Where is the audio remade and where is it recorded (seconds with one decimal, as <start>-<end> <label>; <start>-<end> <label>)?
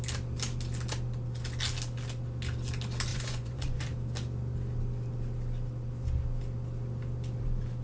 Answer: 0.0-3.1 recorded; 3.1-3.8 remade; 3.8-7.8 recorded